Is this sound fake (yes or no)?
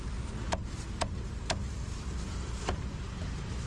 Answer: no